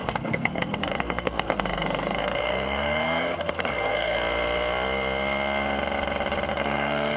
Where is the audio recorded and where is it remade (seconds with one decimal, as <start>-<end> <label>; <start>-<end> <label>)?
0.0-4.2 remade; 4.2-6.5 recorded; 6.5-7.2 remade